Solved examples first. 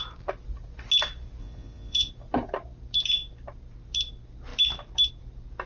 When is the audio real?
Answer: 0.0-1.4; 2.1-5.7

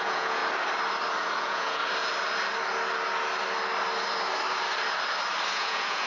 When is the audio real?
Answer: 0.4-1.4; 1.8-5.5